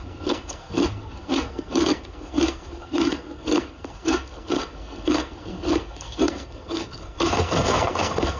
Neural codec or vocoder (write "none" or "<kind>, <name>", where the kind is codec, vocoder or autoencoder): codec, SNAC